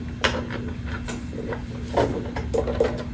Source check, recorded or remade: recorded